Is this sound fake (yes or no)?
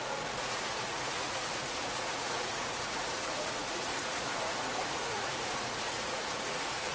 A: yes